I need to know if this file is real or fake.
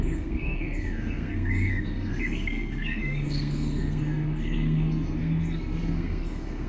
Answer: fake